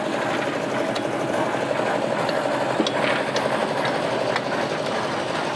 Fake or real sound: real